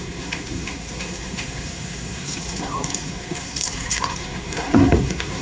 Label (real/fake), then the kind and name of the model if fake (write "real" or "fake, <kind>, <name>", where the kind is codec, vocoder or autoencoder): fake, codec, SNAC